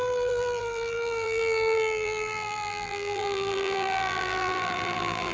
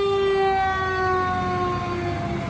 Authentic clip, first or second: second